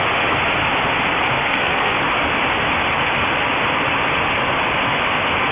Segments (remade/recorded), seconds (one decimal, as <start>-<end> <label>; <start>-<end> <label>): 0.0-1.4 recorded; 1.4-2.0 remade; 2.0-5.5 recorded